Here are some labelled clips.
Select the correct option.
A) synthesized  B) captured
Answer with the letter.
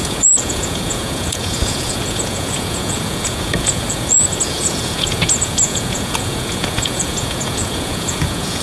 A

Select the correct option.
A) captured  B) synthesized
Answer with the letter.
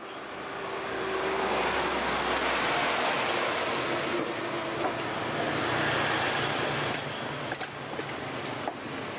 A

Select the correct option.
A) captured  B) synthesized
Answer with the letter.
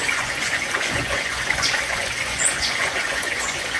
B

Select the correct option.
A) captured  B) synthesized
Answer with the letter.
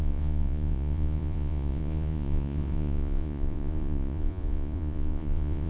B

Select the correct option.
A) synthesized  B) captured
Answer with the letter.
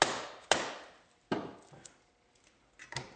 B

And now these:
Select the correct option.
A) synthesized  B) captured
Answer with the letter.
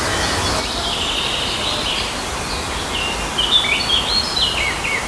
B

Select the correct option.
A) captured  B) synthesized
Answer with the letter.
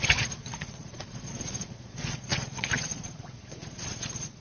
B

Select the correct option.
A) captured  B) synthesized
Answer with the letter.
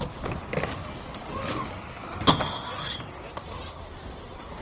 A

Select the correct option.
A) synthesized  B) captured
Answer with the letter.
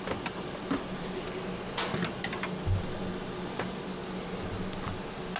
B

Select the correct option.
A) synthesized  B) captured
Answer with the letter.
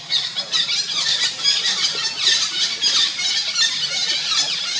B